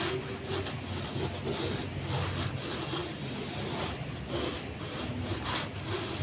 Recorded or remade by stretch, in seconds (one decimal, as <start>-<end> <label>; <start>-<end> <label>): 0.0-6.2 recorded